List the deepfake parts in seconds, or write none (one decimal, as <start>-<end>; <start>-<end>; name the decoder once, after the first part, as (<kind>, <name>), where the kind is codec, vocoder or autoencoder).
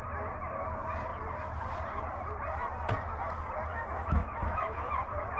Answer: 3.7-4.9 (autoencoder, DAC-VAE)